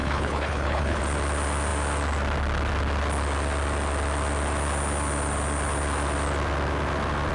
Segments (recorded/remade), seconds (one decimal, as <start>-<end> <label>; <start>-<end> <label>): 0.0-1.0 remade; 1.0-7.3 recorded